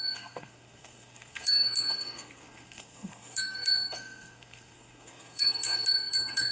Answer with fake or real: fake